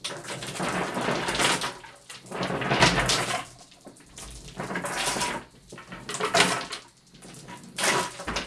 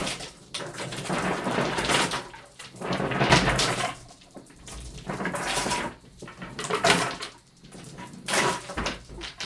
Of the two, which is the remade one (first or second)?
second